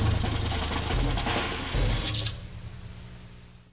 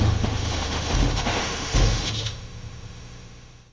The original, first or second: first